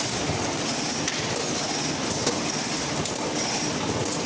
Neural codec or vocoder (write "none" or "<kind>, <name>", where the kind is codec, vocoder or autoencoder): none